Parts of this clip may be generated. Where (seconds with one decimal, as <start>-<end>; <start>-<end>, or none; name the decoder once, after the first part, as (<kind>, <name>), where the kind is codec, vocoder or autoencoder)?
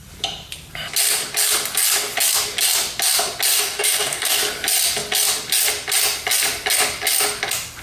3.5-4.4 (codec, DAC)